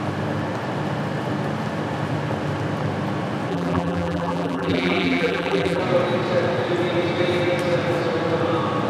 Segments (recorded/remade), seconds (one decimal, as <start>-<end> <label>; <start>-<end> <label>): 0.0-3.5 recorded; 3.5-5.8 remade; 5.8-8.9 recorded